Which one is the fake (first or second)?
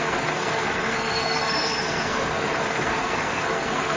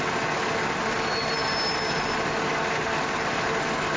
first